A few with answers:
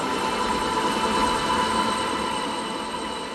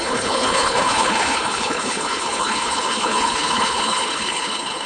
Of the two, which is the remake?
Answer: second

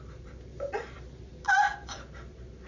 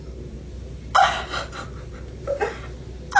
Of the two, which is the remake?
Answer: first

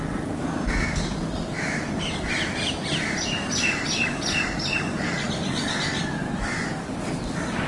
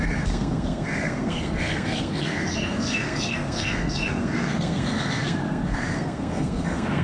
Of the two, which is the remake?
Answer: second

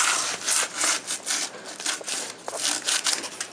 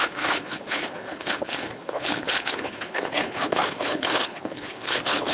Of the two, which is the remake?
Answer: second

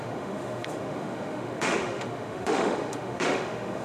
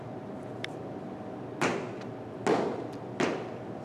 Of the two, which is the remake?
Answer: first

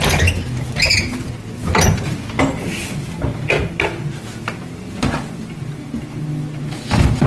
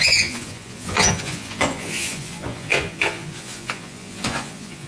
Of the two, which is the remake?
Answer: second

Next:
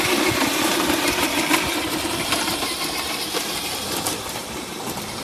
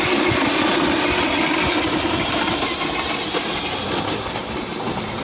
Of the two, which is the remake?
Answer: first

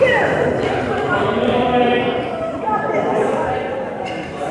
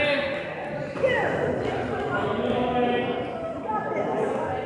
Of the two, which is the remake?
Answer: first